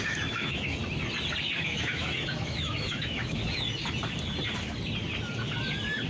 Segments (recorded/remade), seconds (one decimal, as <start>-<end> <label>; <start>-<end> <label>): 0.0-0.8 remade; 0.8-1.6 recorded; 1.6-3.4 remade; 3.4-6.1 recorded